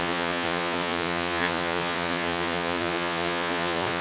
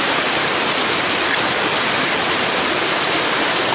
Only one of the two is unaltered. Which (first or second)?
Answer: second